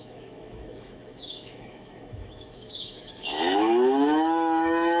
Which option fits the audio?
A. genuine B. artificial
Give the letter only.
B